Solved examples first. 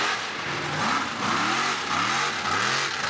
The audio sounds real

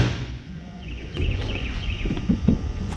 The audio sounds fake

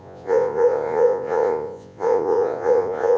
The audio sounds fake